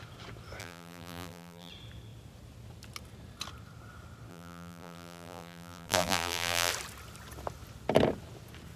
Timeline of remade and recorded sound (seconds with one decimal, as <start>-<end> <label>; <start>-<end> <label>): 0.0-0.6 recorded; 0.6-1.7 remade; 1.7-4.3 recorded; 4.3-6.7 remade; 6.7-8.8 recorded